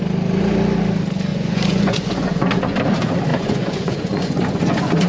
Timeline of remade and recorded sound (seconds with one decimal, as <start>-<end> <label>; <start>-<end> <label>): 0.0-1.3 recorded; 1.3-2.8 remade; 2.8-3.3 recorded; 3.3-5.1 remade